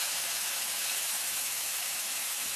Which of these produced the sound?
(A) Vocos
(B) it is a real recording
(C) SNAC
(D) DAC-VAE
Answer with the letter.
D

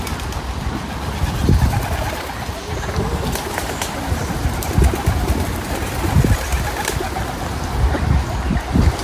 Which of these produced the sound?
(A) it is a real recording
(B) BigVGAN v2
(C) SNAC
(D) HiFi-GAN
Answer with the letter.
A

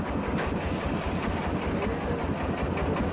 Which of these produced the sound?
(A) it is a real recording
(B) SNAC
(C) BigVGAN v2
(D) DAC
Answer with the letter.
A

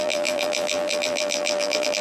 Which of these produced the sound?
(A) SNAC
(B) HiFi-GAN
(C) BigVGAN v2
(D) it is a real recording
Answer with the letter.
C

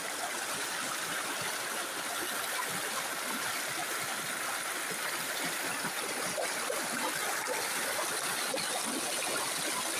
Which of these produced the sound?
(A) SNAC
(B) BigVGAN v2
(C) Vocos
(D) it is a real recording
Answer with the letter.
D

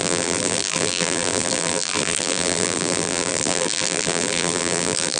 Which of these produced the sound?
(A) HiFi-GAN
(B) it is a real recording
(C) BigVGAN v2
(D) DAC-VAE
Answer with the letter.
C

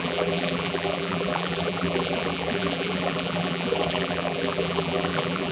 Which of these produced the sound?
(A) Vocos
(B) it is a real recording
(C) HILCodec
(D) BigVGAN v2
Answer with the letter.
D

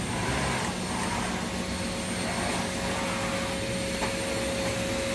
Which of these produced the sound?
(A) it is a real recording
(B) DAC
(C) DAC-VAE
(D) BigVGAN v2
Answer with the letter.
A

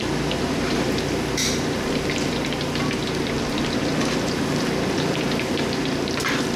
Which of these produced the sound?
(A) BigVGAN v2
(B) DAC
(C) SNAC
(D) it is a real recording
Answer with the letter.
A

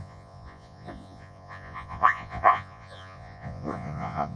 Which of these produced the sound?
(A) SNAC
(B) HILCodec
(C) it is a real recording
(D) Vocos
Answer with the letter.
D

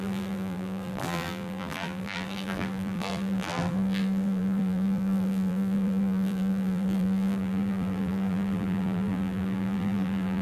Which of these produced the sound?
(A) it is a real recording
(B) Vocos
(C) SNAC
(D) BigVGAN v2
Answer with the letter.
D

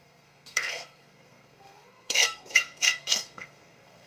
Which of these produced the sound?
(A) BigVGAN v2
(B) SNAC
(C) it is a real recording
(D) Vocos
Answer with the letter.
B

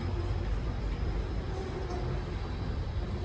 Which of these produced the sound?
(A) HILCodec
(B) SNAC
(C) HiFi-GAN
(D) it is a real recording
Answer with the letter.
D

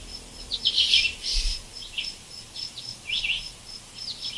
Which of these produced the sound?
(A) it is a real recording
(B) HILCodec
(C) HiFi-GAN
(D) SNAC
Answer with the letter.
A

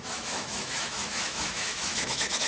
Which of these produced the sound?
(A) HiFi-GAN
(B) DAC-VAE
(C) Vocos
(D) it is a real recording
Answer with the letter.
B